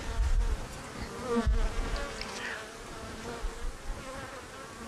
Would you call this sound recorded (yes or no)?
yes